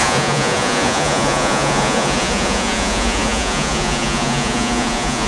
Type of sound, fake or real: fake